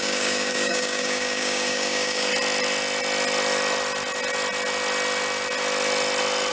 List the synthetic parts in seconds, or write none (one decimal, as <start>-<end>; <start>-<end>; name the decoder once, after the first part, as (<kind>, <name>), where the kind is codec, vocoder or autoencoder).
0.0-2.3 (codec, DAC)